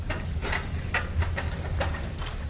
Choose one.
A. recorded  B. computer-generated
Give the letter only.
A